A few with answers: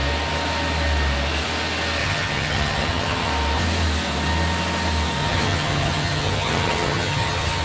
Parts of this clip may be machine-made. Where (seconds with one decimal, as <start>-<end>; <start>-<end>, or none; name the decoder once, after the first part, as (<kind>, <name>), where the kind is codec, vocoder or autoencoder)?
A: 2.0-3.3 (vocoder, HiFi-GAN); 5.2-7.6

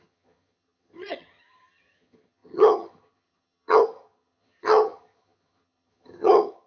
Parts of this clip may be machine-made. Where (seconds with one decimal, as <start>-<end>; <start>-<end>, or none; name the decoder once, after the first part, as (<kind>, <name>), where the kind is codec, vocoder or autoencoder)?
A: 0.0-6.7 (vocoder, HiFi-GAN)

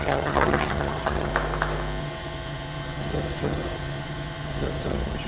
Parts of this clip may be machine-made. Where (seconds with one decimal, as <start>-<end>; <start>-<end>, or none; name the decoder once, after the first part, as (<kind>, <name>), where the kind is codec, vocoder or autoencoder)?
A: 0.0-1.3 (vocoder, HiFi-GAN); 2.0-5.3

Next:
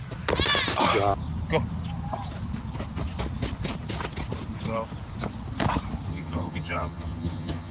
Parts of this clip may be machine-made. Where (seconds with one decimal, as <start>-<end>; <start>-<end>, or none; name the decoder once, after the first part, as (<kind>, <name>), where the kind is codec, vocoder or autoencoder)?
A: 6.1-7.7 (vocoder, HiFi-GAN)